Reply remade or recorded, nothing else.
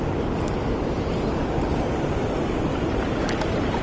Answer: recorded